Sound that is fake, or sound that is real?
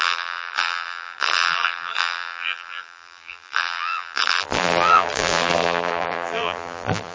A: fake